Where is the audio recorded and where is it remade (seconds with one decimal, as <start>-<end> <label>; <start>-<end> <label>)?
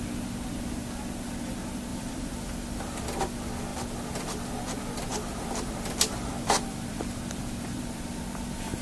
0.0-1.9 recorded; 1.9-3.2 remade; 3.2-3.7 recorded; 3.7-4.5 remade; 4.5-5.1 recorded; 5.1-8.2 remade; 8.2-8.8 recorded